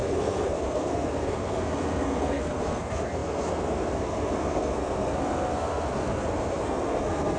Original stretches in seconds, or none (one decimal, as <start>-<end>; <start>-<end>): none